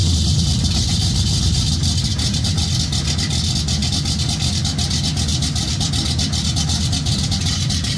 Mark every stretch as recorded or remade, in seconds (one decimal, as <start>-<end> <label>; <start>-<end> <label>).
0.0-1.6 remade; 1.6-2.1 recorded; 2.1-2.6 remade; 2.6-5.3 recorded; 5.3-5.9 remade; 5.9-7.1 recorded; 7.1-8.0 remade